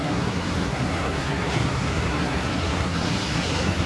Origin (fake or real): fake